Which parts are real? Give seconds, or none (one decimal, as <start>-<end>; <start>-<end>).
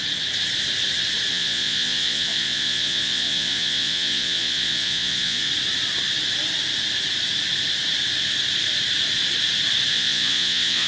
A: 0.0-1.3; 5.5-9.9